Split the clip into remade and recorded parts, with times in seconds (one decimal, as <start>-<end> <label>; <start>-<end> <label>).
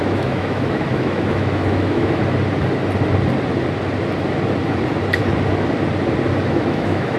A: 0.0-2.2 remade; 2.2-6.5 recorded; 6.5-7.2 remade